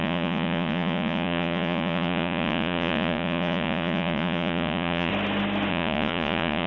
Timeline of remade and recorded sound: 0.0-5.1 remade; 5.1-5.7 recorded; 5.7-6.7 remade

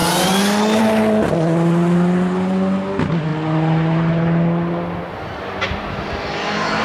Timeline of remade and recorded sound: 0.0-6.8 recorded

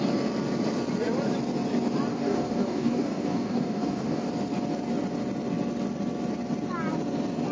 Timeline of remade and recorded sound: 0.0-2.1 recorded; 2.1-4.3 remade; 4.3-7.5 recorded

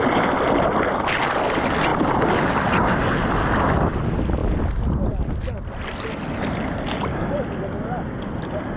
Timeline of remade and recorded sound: 0.0-8.8 recorded